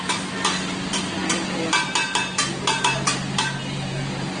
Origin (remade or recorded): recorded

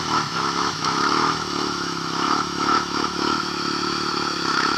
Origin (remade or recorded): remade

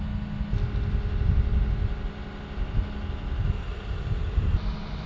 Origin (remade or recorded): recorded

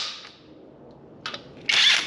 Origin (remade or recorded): recorded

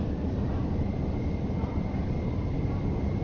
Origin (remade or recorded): recorded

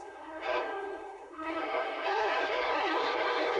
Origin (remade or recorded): remade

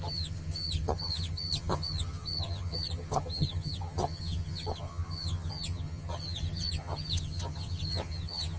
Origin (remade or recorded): remade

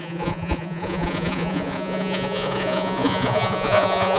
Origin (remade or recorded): remade